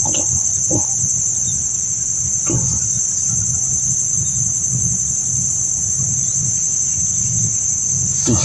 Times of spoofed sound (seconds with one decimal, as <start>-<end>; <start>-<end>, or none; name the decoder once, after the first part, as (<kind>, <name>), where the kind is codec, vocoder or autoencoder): none